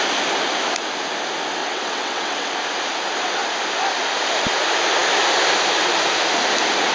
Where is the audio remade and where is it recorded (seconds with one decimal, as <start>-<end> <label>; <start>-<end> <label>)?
0.0-1.6 recorded; 1.6-2.5 remade; 2.5-6.9 recorded